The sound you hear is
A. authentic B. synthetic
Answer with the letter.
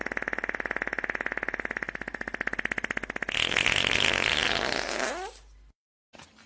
A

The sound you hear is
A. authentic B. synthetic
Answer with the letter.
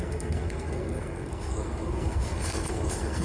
B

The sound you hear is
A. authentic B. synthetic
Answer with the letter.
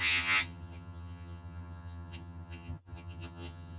B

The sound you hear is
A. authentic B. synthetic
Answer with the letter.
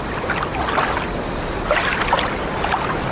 A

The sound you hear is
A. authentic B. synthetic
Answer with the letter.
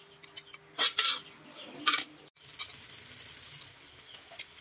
A